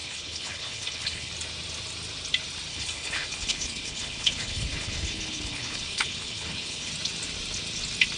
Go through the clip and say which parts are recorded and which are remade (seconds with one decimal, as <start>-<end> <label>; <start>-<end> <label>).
0.0-1.3 remade; 1.3-2.7 recorded; 2.7-6.9 remade; 6.9-8.2 recorded